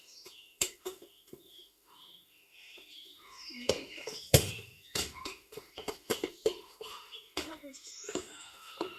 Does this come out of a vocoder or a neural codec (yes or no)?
yes